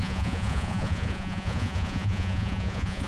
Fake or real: fake